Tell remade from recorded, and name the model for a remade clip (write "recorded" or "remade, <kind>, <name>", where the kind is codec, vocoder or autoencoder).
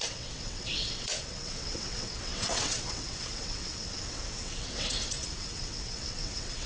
remade, vocoder, WaveNeXt